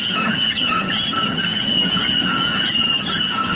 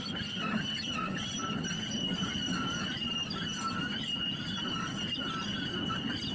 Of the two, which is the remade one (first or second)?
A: first